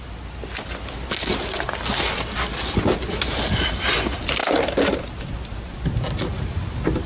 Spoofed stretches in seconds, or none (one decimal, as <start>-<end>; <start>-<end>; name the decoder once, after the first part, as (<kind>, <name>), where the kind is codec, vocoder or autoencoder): none